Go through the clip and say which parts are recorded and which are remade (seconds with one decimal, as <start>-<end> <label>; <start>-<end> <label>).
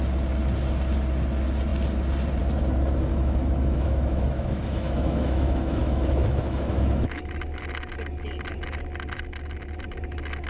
0.0-3.1 recorded; 3.1-7.2 remade; 7.2-10.5 recorded